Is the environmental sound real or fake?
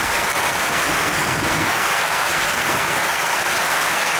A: fake